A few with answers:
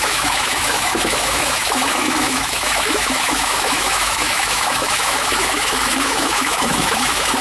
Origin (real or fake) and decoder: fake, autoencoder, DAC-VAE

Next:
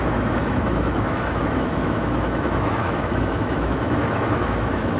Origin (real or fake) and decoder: fake, autoencoder, DAC-VAE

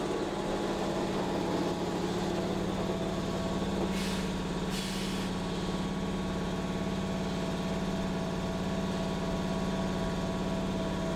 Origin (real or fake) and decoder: real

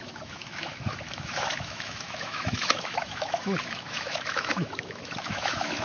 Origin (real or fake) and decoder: fake, autoencoder, DAC-VAE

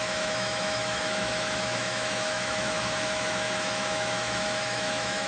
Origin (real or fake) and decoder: fake, autoencoder, DAC-VAE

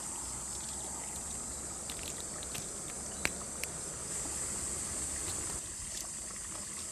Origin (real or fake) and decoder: real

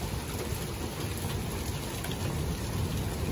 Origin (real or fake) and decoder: real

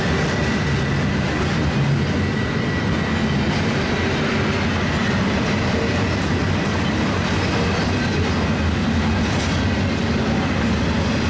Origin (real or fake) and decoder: real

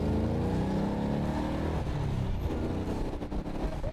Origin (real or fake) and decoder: real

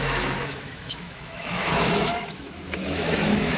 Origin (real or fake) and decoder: fake, autoencoder, DAC-VAE